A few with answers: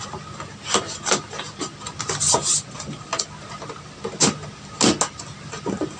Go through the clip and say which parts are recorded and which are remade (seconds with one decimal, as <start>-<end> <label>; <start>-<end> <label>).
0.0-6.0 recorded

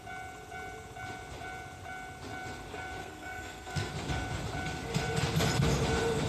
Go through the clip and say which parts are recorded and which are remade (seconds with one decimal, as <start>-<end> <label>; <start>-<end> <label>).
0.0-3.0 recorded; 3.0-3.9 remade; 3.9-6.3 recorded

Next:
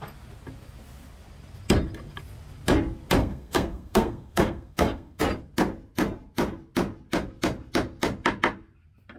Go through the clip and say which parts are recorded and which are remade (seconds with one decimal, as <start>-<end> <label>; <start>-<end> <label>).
0.0-3.2 recorded; 3.2-5.2 remade; 5.2-9.2 recorded

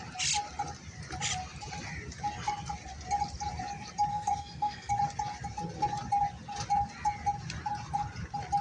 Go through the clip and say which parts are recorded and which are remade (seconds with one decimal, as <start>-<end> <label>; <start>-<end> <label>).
0.0-4.1 recorded; 4.1-4.9 remade; 4.9-8.6 recorded